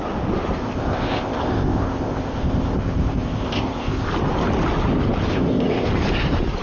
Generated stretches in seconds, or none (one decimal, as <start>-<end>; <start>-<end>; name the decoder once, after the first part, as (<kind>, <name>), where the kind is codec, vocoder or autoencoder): 0.6-4.1 (codec, ZipCodec); 5.3-5.9